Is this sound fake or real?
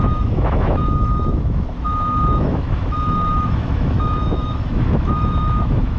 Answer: fake